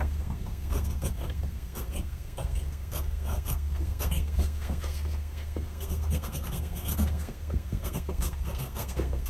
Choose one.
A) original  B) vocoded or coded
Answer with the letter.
B